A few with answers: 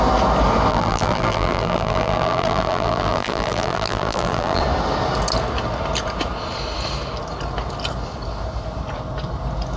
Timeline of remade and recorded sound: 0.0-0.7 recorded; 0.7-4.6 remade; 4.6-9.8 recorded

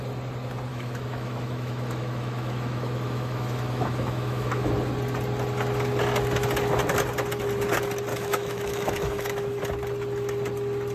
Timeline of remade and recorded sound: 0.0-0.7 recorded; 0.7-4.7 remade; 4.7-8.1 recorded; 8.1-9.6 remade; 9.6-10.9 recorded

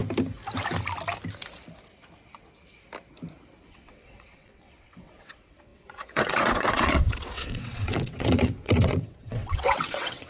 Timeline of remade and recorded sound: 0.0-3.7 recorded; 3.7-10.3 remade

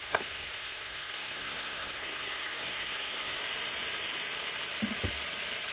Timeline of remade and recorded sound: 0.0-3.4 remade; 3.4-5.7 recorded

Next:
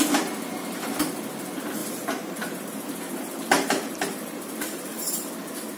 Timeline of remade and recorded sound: 0.0-1.8 recorded; 1.8-5.3 remade; 5.3-5.8 recorded